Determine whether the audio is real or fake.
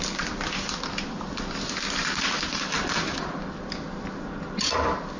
real